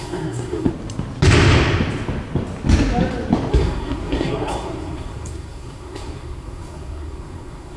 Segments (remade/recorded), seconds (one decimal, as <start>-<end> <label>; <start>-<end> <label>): 0.0-0.7 remade; 0.7-3.5 recorded; 3.5-7.8 remade